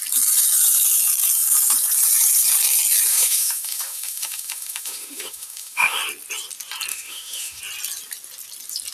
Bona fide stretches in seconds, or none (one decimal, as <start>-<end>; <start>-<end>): 0.0-3.1; 6.0-6.9; 7.6-8.9